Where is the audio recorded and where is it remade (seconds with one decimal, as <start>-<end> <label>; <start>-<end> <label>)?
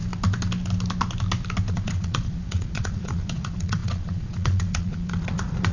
0.0-1.7 recorded; 1.7-5.7 remade